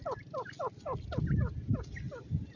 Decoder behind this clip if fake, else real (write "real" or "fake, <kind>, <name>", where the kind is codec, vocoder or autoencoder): real